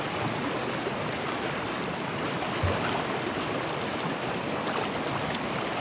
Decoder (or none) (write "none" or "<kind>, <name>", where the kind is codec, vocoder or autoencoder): none